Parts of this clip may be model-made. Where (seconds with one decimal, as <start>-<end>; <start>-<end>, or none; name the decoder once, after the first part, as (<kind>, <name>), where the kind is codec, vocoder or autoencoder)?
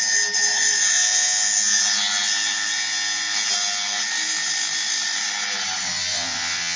6.1-6.8 (vocoder, WaveNeXt)